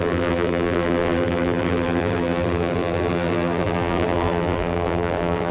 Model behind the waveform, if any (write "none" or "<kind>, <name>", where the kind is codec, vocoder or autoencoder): vocoder, BigVGAN v2